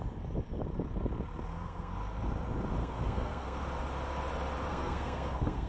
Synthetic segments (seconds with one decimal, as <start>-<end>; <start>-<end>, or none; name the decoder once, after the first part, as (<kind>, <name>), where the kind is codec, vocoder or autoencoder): 1.5-2.0 (codec, SNAC); 2.8-3.6; 4.7-5.7